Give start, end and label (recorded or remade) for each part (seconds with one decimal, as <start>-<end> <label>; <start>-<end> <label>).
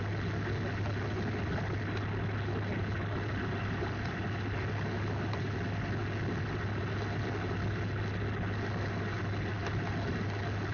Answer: 0.0-10.7 recorded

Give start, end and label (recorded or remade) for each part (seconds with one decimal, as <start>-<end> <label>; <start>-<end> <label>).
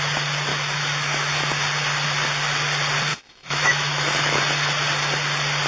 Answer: 0.0-0.5 recorded; 0.5-1.4 remade; 1.4-3.1 recorded; 3.1-4.4 remade; 4.4-5.7 recorded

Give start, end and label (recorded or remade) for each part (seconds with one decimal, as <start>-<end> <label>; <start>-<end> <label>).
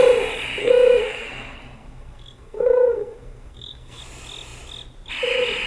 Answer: 0.0-0.6 recorded; 0.6-4.0 remade; 4.0-5.7 recorded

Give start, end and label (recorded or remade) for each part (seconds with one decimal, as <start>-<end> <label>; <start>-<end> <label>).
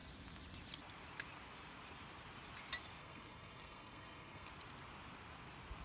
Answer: 0.0-3.0 recorded; 3.0-4.5 remade; 4.5-5.8 recorded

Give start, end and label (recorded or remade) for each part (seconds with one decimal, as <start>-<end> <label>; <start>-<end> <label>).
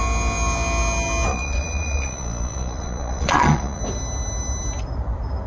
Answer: 0.0-1.3 recorded; 1.3-3.8 remade; 3.8-5.5 recorded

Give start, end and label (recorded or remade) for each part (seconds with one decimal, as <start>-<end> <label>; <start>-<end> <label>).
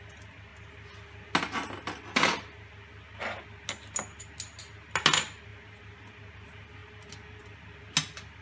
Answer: 0.0-8.4 recorded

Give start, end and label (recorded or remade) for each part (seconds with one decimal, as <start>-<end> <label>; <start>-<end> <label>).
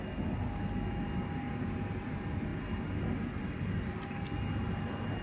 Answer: 0.0-5.2 recorded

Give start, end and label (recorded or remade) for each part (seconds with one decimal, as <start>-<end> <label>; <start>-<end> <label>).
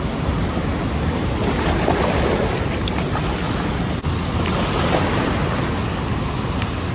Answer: 0.0-6.9 recorded